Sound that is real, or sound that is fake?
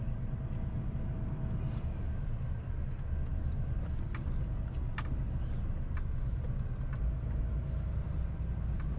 real